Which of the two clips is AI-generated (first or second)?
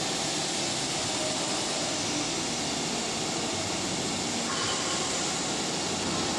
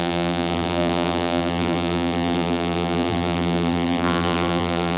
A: second